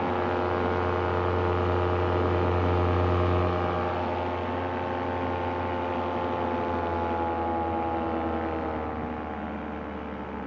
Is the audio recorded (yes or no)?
yes